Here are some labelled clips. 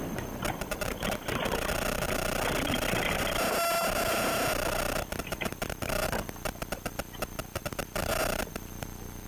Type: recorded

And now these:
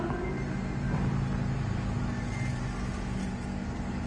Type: recorded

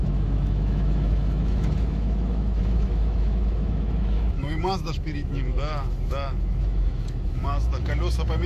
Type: remade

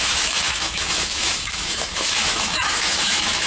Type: remade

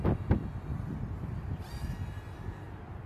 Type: recorded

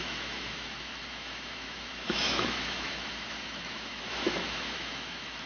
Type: remade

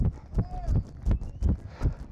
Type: recorded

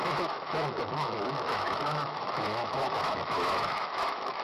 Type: remade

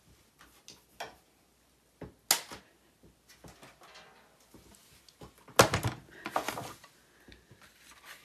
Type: recorded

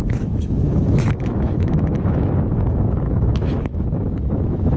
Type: remade